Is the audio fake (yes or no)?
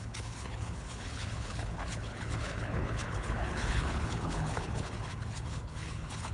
yes